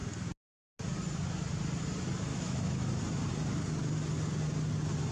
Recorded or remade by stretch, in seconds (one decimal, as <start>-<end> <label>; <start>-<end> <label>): 0.0-2.3 recorded; 2.3-2.9 remade; 2.9-5.1 recorded